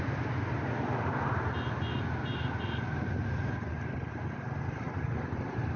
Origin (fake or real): real